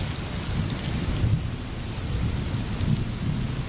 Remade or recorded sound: recorded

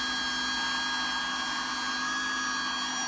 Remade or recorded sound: recorded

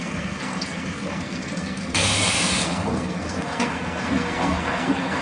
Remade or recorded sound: remade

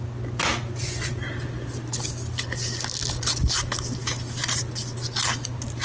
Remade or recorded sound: recorded